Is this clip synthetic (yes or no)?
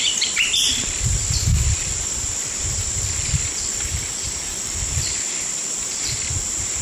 yes